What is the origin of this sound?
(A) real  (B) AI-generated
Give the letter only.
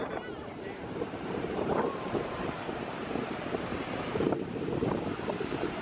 B